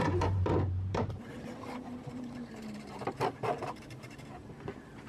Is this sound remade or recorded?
remade